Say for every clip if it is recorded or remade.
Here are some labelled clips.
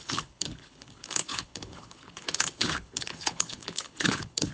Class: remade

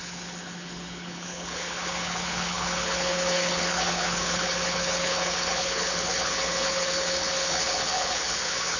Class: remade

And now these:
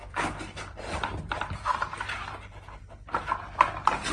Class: recorded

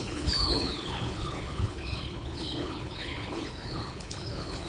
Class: remade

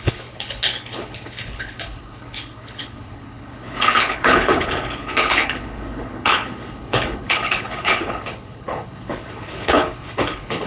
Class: remade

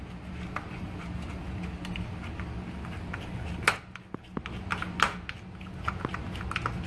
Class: recorded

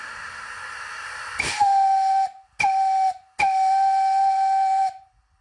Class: recorded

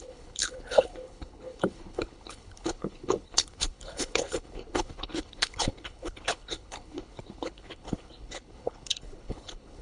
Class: remade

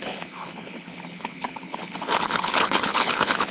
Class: remade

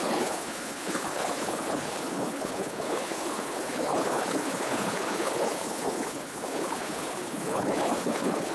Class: remade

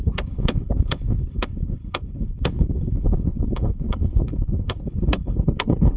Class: remade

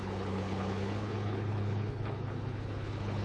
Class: remade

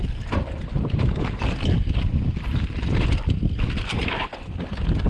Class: recorded